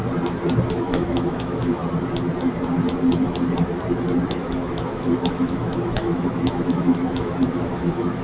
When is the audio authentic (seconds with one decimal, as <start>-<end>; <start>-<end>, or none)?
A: 0.0-0.7; 1.8-4.3